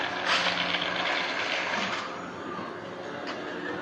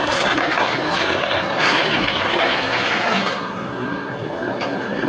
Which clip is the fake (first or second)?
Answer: second